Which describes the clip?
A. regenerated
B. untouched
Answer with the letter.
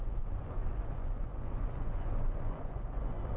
A